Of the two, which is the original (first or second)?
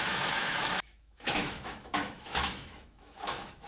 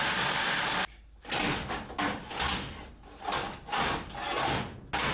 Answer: second